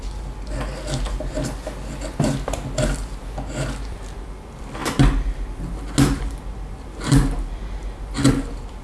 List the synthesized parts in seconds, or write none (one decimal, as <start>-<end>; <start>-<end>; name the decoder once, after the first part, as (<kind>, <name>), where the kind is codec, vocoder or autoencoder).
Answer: none